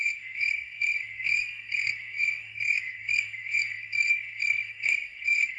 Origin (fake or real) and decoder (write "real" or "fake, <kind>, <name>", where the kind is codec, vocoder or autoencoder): fake, codec, SNAC